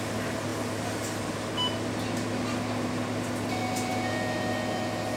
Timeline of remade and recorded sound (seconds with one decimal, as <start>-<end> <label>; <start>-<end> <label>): 0.0-5.2 recorded